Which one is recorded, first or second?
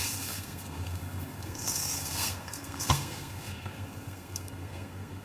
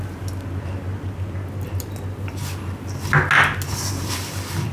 second